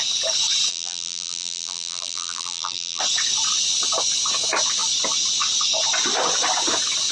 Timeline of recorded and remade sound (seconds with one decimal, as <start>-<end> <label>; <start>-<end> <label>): 0.0-0.7 recorded; 0.7-3.0 remade; 3.0-7.1 recorded